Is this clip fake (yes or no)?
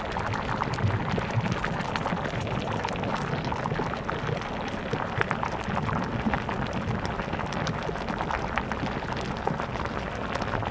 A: no